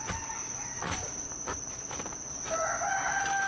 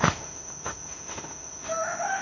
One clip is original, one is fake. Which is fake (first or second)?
second